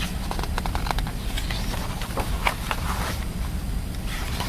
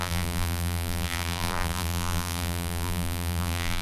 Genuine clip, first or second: first